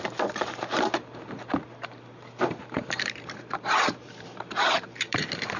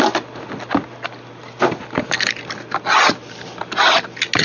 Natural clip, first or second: second